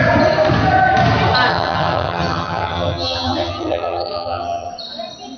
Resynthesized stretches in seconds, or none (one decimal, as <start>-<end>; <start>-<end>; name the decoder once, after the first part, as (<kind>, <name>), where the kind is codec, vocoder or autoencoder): 1.5-4.7 (vocoder, HiFi-GAN)